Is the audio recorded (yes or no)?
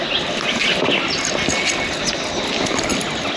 yes